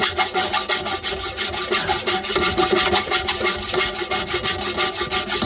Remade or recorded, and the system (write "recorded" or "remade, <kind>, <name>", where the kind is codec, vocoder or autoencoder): recorded